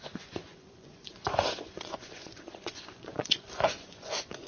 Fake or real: fake